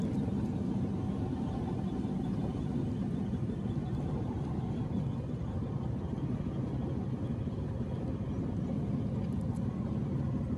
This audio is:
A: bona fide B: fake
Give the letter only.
A